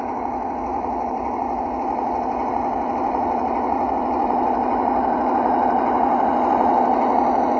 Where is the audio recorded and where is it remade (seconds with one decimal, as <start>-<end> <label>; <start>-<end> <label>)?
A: 0.0-0.7 recorded; 0.7-1.6 remade; 1.6-2.9 recorded; 2.9-6.5 remade; 6.5-7.6 recorded